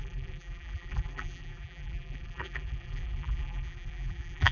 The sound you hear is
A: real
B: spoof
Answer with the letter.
B